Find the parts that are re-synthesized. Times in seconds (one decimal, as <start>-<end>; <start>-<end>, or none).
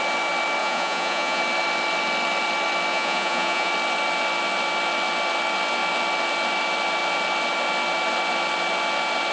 0.6-1.4; 2.9-3.7